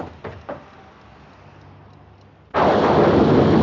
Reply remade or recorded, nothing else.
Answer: recorded